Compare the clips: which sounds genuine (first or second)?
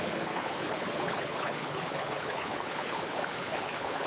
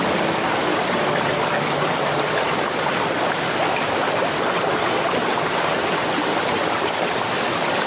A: second